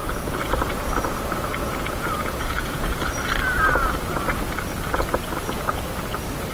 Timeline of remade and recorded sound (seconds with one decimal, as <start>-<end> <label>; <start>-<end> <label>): 0.0-0.5 remade; 0.5-1.6 recorded; 1.6-2.8 remade; 2.8-6.5 recorded